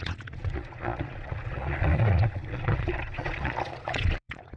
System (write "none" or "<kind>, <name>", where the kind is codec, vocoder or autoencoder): vocoder, Vocos